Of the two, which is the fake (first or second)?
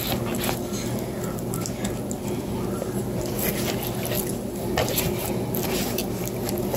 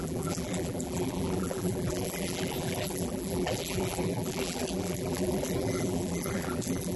second